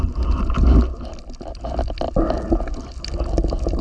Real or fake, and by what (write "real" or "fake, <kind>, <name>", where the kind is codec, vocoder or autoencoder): real